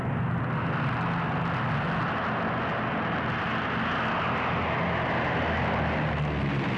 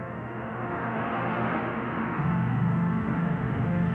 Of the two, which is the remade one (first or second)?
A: second